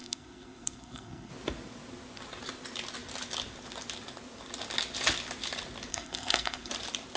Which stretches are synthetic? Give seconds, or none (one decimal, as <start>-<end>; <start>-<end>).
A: 0.0-1.3; 5.9-6.7

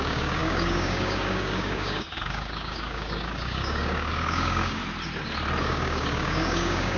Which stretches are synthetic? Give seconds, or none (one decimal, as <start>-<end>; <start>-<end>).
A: 0.0-4.8; 5.6-7.0

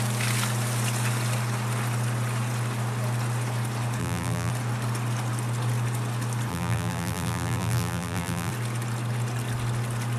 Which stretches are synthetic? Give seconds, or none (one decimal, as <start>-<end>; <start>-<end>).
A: 4.0-4.5; 6.5-8.5

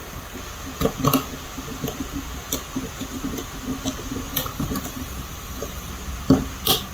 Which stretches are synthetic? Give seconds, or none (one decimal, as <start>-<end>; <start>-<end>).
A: 4.3-5.9

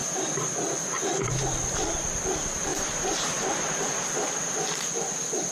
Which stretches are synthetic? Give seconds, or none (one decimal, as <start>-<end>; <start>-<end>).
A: 0.0-1.5; 2.7-3.8

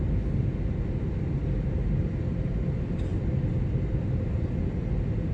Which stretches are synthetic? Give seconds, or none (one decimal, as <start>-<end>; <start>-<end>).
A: none

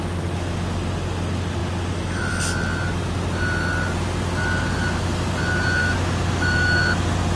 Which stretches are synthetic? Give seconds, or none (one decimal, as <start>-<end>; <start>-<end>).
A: 5.8-6.8

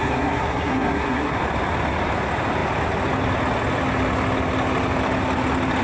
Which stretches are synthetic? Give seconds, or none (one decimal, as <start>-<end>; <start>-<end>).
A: 0.0-1.4